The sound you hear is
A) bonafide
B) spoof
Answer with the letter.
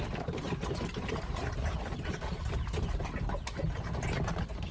A